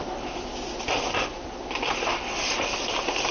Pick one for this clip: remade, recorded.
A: recorded